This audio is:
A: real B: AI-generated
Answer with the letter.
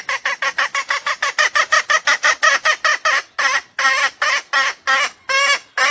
A